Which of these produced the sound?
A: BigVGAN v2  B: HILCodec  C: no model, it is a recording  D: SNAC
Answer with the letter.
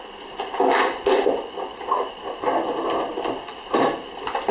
C